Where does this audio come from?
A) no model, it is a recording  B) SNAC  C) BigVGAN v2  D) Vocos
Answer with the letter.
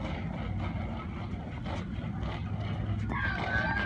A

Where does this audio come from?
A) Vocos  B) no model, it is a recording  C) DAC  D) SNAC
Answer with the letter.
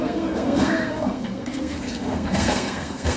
D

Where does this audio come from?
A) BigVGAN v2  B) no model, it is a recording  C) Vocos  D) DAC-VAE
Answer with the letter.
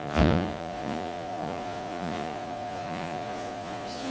C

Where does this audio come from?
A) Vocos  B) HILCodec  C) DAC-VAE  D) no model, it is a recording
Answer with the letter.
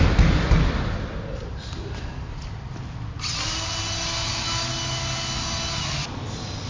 D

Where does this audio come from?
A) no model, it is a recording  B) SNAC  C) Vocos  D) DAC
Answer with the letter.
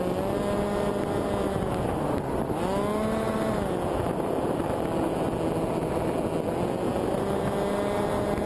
A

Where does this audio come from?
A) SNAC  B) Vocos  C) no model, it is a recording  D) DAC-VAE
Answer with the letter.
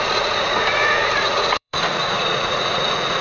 B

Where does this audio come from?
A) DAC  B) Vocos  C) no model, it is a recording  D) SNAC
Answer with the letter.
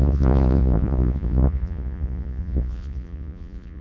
B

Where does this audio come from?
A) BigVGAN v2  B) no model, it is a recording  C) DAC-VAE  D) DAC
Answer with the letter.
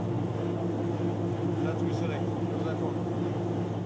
B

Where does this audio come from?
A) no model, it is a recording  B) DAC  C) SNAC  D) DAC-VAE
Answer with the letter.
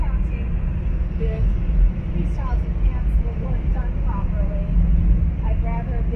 A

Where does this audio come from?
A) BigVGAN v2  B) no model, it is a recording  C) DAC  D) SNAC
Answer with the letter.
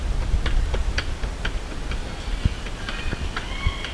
B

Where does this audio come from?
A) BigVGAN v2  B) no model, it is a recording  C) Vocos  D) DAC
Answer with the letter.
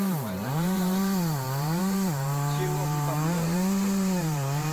A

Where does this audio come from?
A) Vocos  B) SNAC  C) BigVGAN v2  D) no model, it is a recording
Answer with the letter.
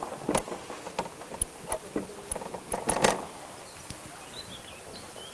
D